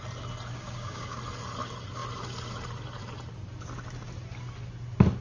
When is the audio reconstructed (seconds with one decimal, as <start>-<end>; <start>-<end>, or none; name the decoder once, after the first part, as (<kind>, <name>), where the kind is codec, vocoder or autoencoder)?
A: 0.5-1.2 (codec, DAC)